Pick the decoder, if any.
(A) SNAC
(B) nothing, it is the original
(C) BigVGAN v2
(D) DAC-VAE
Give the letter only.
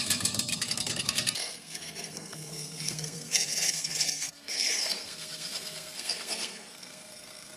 A